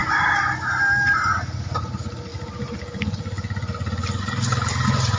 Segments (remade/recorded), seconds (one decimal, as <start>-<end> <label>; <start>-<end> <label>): 0.0-5.2 recorded